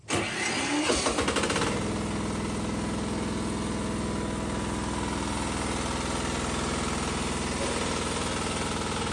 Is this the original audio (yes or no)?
yes